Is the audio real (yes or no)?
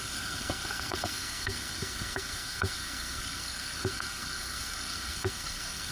no